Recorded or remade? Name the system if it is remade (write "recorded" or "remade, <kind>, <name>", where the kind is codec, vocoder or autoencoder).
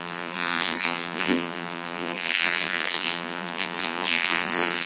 remade, vocoder, BigVGAN v2